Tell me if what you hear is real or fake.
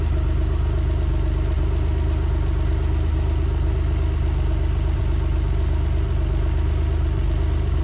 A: real